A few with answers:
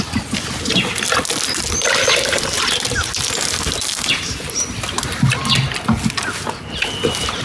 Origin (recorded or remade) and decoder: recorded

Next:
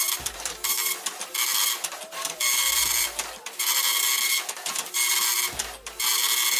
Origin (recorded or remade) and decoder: recorded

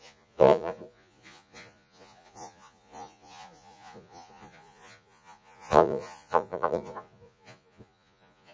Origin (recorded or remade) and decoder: remade, vocoder, Vocos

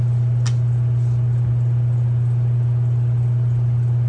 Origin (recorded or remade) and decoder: recorded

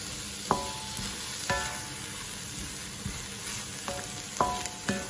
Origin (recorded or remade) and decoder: recorded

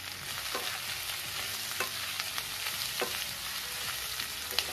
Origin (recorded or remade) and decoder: recorded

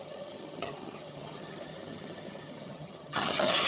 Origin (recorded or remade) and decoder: remade, vocoder, HiFi-GAN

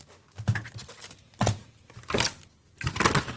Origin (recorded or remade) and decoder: recorded